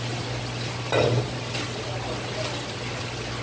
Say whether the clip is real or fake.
real